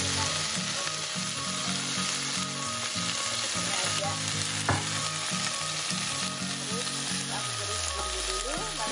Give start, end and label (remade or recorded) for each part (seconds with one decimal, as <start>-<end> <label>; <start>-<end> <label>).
0.0-8.9 recorded